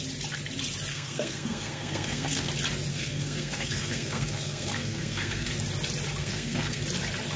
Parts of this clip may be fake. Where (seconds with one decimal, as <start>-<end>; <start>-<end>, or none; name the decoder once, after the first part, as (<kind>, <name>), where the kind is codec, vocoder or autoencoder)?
0.9-2.5 (codec, SNAC); 2.9-5.5; 6.2-6.8